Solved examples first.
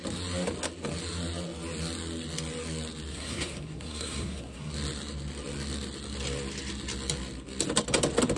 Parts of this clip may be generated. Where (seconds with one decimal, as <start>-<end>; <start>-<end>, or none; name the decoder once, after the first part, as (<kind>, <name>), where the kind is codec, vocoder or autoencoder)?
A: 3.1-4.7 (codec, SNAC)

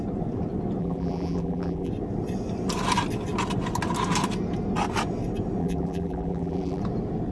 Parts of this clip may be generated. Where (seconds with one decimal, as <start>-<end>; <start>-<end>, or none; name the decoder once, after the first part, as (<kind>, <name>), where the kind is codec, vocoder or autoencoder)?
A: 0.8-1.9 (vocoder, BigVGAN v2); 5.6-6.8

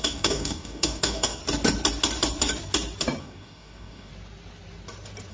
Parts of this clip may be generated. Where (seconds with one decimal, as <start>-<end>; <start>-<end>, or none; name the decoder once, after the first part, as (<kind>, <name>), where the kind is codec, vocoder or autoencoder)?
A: 0.0-1.4 (codec, DAC); 3.2-4.1

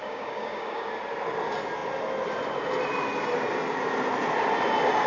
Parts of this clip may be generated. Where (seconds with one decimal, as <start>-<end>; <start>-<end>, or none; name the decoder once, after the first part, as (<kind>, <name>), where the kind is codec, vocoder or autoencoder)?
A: 0.0-0.9 (codec, DAC)

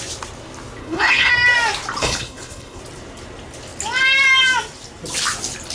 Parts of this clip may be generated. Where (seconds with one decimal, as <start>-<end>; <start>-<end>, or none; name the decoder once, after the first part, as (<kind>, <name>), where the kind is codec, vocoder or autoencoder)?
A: 0.8-1.3 (codec, HILCodec); 2.0-2.8